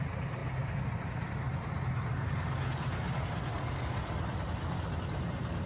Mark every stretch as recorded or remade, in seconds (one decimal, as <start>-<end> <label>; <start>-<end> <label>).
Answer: 0.0-5.7 recorded

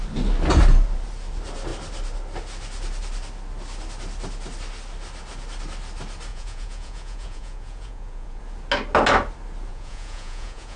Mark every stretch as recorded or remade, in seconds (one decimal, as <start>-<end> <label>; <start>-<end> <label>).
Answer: 0.0-6.3 recorded; 6.3-8.4 remade; 8.4-9.7 recorded; 9.7-10.8 remade

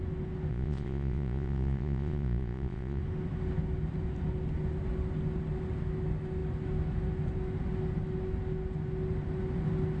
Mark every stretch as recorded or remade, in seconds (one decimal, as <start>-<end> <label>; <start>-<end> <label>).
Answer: 0.0-0.5 recorded; 0.5-3.0 remade; 3.0-10.0 recorded

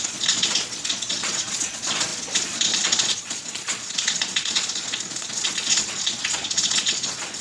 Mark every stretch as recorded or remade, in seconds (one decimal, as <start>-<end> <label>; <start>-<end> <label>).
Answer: 0.0-7.4 remade

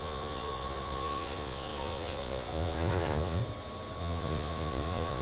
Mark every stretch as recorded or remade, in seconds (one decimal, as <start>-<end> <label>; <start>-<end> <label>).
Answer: 0.0-3.4 remade; 3.4-4.0 recorded; 4.0-5.2 remade

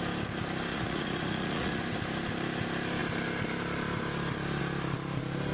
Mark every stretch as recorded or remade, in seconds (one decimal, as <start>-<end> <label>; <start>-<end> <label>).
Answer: 0.0-0.7 recorded; 0.7-1.8 remade; 1.8-5.5 recorded

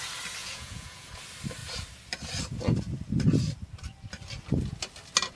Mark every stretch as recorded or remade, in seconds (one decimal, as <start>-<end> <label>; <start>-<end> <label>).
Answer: 0.0-0.4 recorded; 0.4-1.1 remade; 1.1-5.4 recorded